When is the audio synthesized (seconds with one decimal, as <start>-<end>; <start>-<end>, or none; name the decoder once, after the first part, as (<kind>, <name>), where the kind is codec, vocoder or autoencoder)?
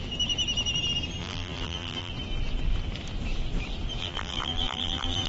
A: 1.2-2.1 (vocoder, BigVGAN v2); 4.0-5.3